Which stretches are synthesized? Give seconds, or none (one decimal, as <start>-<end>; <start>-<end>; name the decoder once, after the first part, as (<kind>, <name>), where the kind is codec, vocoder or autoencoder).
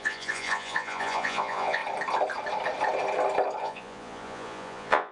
0.0-1.8 (vocoder, Vocos); 3.6-5.1